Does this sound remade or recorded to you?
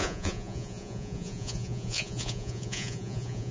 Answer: remade